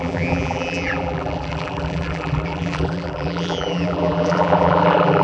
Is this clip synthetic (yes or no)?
yes